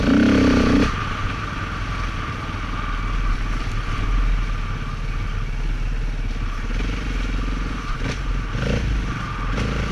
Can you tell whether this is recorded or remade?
recorded